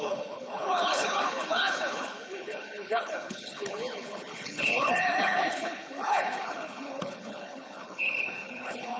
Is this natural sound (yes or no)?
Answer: no